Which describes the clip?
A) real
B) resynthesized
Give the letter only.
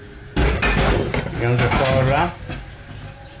A